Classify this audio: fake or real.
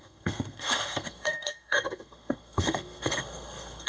fake